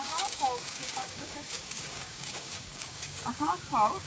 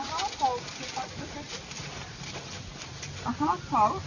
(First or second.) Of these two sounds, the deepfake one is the first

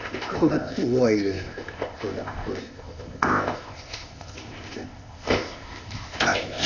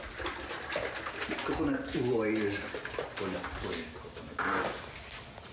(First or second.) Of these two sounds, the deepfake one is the first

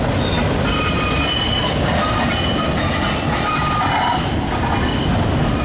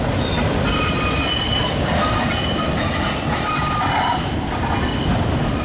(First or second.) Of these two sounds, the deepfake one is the second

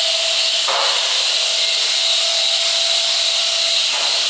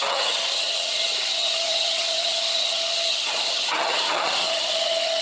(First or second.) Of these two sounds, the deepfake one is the second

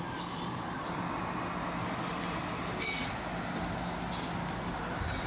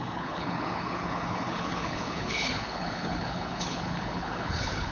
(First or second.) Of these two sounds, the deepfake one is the second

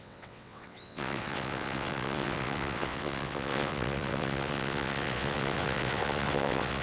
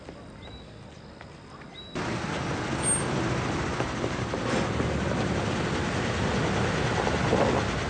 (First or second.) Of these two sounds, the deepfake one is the first